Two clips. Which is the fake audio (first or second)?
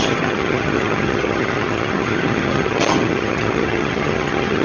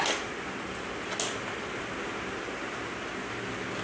first